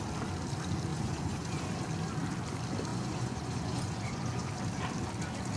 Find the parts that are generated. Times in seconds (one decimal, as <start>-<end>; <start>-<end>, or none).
0.9-1.6; 2.9-4.5